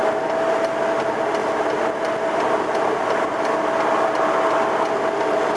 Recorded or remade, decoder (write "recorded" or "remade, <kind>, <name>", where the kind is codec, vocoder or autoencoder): recorded